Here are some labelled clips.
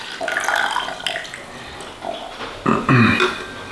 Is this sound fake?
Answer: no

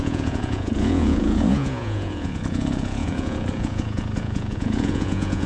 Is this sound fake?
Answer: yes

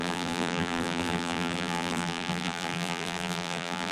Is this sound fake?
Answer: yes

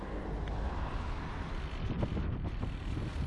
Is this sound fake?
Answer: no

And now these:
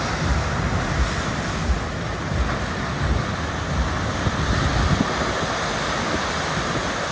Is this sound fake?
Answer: no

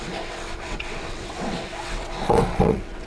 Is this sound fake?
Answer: yes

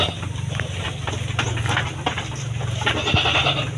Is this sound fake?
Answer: no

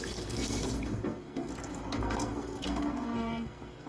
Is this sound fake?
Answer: yes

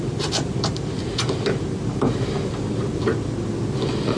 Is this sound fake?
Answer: no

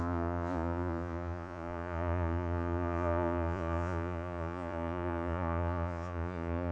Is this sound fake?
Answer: yes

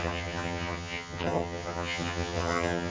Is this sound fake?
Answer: yes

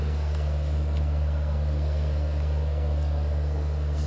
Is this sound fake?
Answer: yes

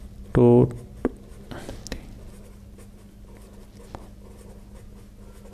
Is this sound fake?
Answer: no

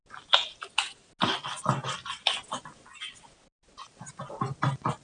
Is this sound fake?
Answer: no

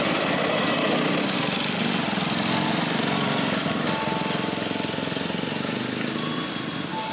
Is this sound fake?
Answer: no